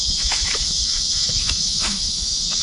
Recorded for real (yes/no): no